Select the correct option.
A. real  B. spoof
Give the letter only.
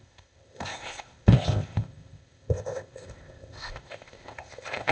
B